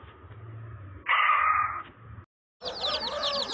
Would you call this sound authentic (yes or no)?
yes